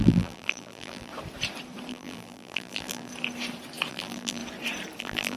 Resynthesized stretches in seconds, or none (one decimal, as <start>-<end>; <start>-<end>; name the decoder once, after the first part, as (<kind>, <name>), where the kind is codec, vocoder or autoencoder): 0.0-1.1 (vocoder, BigVGAN v2); 1.9-3.1; 3.9-4.4; 5.0-5.4

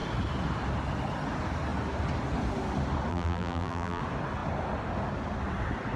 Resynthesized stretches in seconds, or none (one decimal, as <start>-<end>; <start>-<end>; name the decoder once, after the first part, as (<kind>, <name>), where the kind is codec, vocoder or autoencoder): 3.1-4.0 (vocoder, BigVGAN v2)